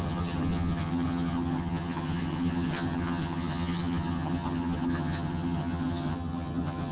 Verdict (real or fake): fake